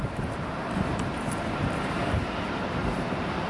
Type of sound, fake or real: fake